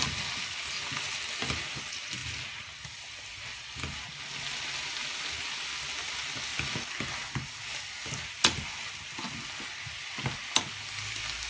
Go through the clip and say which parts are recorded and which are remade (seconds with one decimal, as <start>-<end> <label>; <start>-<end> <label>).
0.0-11.5 recorded